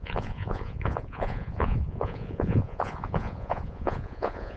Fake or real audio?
fake